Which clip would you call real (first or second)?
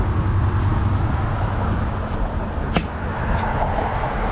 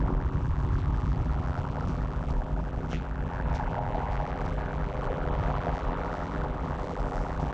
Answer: first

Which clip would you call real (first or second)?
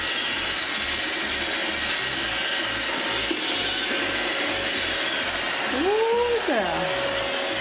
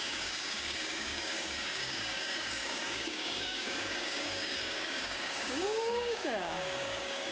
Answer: first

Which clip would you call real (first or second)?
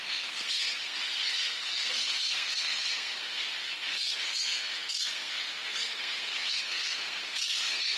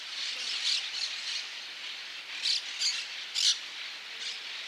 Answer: second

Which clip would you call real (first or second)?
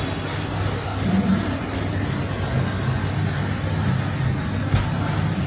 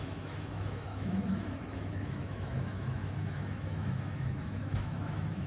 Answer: first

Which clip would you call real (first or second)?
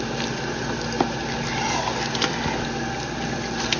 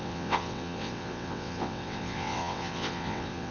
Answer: first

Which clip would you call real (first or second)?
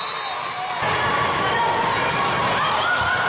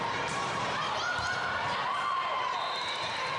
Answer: first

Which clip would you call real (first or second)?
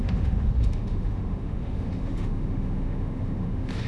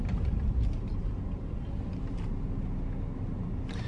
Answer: second